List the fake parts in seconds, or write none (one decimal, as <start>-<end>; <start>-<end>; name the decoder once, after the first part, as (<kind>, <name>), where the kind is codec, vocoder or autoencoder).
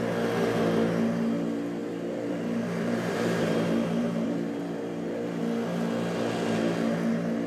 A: 1.8-5.4 (vocoder, BigVGAN v2)